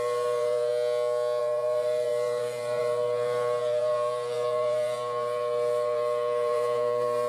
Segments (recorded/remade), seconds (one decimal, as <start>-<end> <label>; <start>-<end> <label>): 0.0-0.7 remade; 0.7-1.4 recorded; 1.4-7.3 remade